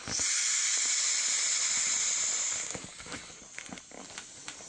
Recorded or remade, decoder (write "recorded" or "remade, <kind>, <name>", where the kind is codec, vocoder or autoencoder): recorded